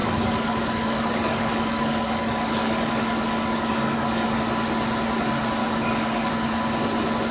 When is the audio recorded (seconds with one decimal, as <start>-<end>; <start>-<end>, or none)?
4.4-5.6; 6.3-7.3